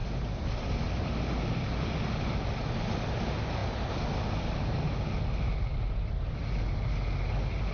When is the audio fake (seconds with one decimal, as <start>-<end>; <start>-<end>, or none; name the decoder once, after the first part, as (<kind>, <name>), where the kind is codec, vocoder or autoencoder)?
none